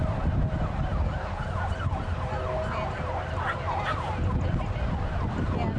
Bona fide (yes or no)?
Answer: yes